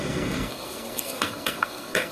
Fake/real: fake